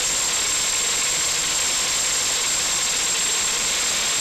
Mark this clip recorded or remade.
recorded